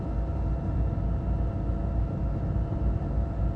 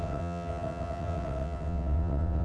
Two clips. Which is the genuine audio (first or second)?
first